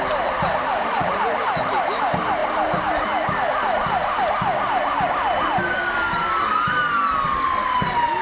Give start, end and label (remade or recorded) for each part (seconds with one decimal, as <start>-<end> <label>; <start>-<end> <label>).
0.0-8.2 recorded